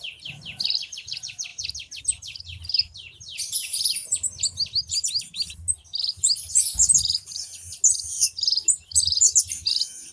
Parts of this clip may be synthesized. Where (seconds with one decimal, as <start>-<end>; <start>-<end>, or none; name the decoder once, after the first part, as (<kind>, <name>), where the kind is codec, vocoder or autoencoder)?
none